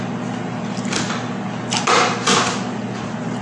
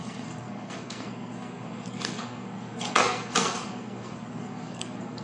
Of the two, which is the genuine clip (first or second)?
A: first